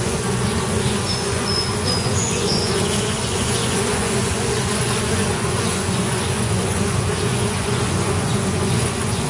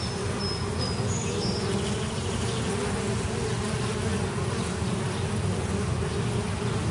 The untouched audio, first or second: second